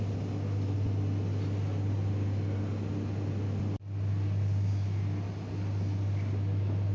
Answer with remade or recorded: recorded